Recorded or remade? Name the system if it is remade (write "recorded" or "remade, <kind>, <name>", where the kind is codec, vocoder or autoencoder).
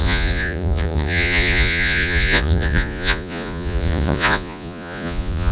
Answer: remade, vocoder, Vocos